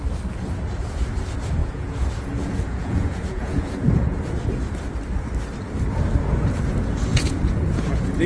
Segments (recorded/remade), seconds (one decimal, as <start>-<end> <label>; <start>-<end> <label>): 0.0-1.6 recorded; 1.6-4.2 remade; 4.2-7.1 recorded; 7.1-7.9 remade; 7.9-8.3 recorded